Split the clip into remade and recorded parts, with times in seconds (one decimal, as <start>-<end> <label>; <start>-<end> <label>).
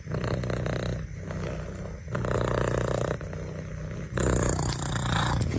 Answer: 0.0-5.6 recorded